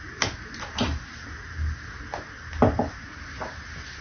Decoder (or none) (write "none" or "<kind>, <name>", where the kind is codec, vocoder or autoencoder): none